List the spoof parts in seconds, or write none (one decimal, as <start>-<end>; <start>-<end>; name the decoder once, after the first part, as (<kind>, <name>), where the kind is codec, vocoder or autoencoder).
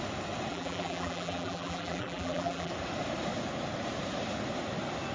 0.5-2.7 (vocoder, BigVGAN v2)